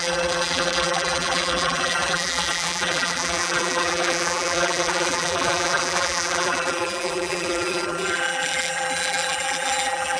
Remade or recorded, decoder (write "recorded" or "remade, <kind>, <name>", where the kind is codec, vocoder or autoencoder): remade, vocoder, BigVGAN v2